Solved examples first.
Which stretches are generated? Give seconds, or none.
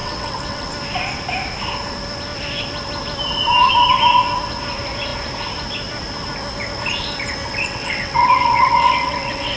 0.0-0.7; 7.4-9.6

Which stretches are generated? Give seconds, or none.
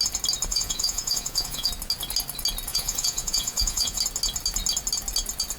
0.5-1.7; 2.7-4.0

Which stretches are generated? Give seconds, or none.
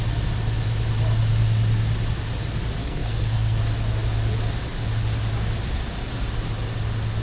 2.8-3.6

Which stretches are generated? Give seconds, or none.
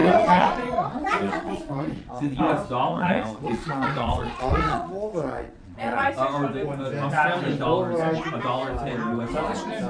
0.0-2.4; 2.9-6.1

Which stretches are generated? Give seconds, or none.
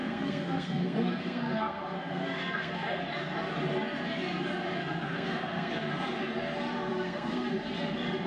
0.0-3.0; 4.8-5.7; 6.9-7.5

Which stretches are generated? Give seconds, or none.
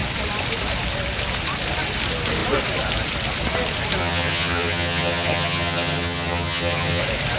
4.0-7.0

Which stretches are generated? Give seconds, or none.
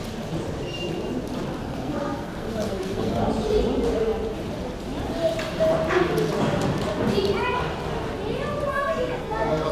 1.6-3.2; 8.7-9.7